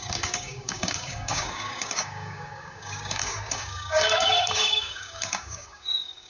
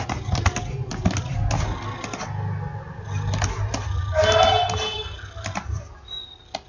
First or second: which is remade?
first